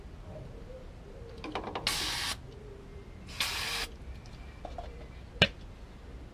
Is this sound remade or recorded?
recorded